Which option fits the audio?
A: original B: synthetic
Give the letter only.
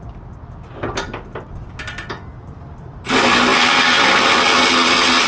A